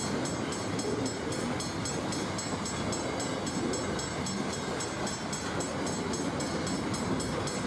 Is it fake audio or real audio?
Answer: real